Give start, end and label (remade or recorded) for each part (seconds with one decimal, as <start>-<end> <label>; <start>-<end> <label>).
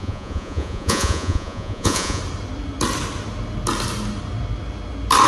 0.0-2.2 remade; 2.2-5.3 recorded